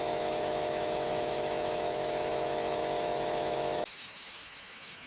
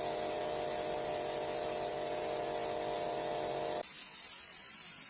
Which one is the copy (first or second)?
first